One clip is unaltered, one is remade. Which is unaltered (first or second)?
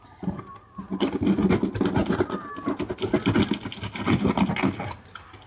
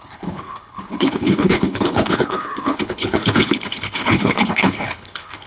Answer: first